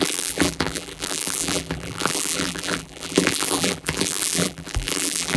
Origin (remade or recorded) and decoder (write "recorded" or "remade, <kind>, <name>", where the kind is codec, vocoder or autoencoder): remade, vocoder, BigVGAN v2